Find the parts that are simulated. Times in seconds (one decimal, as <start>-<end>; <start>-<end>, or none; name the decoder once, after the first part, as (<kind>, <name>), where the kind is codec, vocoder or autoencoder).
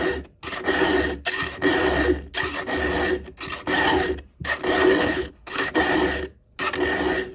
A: 5.0-5.7 (codec, HILCodec)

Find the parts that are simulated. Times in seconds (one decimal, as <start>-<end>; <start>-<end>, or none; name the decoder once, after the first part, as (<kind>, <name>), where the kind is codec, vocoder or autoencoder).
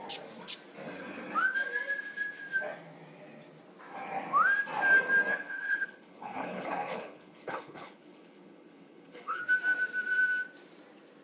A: 5.3-9.4 (codec, HILCodec)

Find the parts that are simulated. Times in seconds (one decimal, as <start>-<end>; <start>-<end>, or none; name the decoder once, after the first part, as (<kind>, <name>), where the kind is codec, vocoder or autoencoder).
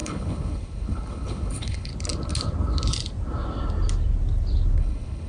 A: 0.0-1.9 (codec, HILCodec); 4.8-5.3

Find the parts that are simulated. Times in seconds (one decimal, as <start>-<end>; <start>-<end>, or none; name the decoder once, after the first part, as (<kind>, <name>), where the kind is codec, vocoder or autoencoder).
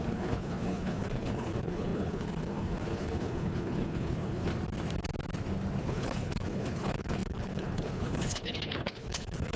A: 0.0-4.5 (codec, HILCodec); 5.8-9.6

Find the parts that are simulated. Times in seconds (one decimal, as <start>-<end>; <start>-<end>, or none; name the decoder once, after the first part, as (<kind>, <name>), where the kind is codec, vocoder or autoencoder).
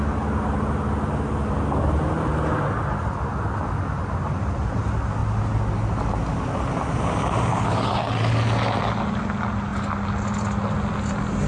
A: 7.5-8.2 (codec, HILCodec)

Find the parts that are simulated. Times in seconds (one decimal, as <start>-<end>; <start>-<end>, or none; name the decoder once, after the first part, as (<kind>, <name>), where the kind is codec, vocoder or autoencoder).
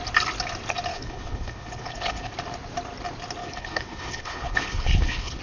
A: 0.9-2.3 (codec, HILCodec); 3.4-5.4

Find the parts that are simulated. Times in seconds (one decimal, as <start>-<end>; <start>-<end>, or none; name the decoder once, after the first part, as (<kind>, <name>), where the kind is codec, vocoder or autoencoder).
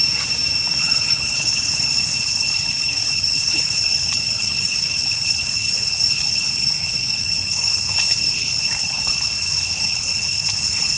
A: 0.8-11.0 (codec, HILCodec)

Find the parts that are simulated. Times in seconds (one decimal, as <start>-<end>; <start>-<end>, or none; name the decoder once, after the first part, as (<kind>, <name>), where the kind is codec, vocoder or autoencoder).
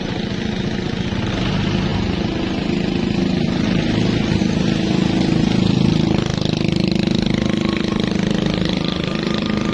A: none